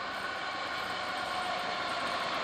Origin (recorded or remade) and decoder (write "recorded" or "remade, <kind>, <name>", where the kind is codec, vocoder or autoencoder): recorded